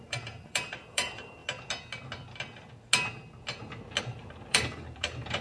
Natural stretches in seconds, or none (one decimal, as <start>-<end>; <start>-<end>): 1.4-4.0